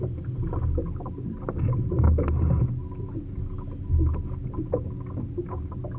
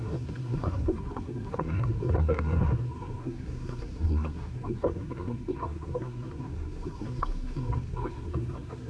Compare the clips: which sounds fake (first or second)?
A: second